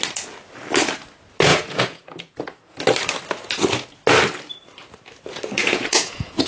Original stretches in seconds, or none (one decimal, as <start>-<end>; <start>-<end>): 0.0-1.5; 2.8-5.6